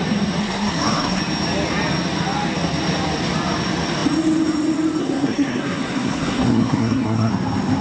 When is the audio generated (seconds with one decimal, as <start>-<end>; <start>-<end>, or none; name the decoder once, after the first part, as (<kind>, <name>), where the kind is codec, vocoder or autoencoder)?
0.4-1.2 (codec, SNAC); 5.0-7.3